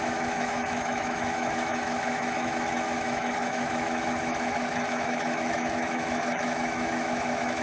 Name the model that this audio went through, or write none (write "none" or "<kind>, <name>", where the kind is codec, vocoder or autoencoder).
autoencoder, DAC-VAE